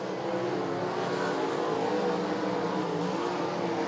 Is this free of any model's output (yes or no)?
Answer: yes